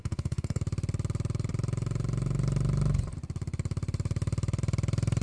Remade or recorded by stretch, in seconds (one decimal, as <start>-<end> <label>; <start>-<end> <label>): 0.0-0.6 remade; 0.6-5.2 recorded